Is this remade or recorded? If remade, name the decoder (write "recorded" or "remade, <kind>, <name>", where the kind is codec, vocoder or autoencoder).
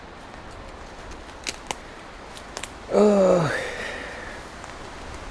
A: recorded